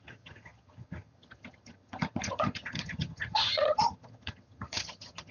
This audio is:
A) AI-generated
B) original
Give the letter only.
A